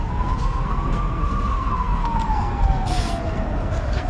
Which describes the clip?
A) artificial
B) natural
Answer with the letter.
A